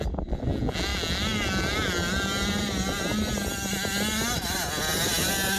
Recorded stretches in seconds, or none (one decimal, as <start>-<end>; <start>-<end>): 0.0-5.6